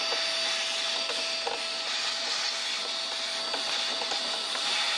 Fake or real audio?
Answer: real